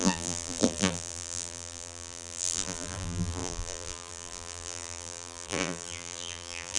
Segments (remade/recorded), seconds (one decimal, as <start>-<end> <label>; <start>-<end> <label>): 0.0-6.8 remade